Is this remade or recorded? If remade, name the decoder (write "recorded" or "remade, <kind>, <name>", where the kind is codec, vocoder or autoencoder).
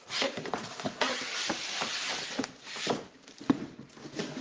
remade, vocoder, BigVGAN v2